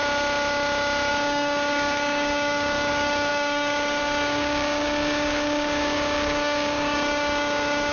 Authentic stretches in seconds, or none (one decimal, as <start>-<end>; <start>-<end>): 0.0-1.1